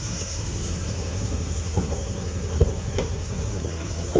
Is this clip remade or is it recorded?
remade